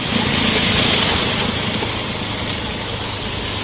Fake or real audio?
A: real